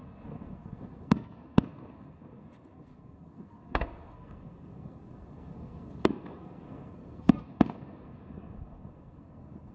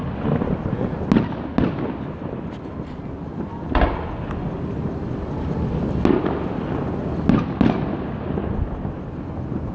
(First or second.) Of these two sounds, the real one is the second